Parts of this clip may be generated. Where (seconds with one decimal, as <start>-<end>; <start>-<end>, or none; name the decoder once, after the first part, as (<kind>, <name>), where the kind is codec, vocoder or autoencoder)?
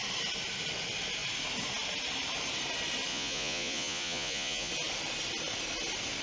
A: 3.1-4.7 (vocoder, Vocos)